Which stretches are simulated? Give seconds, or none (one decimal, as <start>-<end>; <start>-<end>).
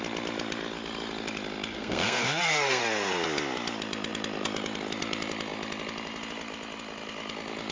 1.7-2.8